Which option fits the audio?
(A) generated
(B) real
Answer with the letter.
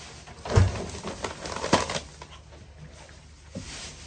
B